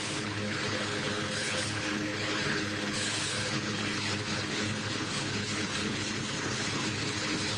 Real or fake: fake